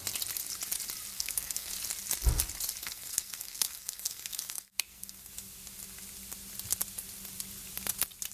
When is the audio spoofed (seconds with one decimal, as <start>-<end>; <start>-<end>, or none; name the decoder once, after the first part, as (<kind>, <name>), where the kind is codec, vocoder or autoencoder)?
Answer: 1.1-1.7 (codec, SNAC); 2.8-5.3